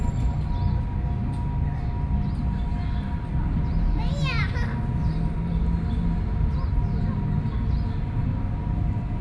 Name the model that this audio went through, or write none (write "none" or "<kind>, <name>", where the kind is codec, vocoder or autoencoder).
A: none